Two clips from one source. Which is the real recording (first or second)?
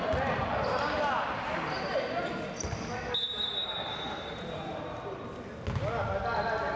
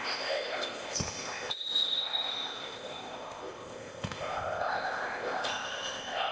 first